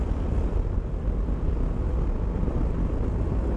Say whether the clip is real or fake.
real